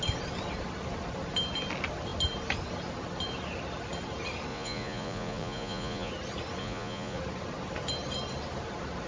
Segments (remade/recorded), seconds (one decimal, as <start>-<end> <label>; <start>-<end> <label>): 0.0-4.5 recorded; 4.5-6.1 remade; 6.1-6.6 recorded; 6.6-7.2 remade; 7.2-9.1 recorded